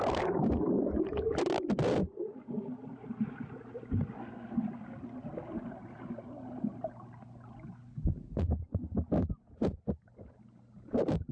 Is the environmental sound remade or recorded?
recorded